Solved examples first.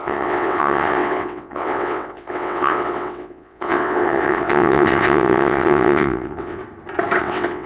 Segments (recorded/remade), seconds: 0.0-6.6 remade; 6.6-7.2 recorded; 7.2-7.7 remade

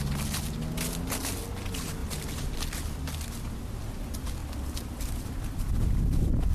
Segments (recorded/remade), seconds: 0.0-6.5 recorded